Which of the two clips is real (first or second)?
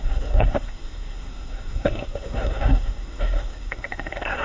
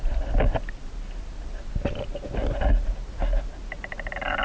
second